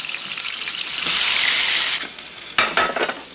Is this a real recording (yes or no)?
yes